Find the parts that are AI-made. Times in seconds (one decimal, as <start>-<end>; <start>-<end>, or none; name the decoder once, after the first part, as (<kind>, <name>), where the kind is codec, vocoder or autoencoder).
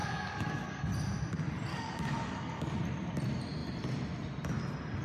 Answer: 0.0-0.8 (codec, DAC); 1.7-2.8